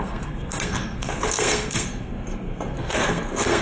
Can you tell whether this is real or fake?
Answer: fake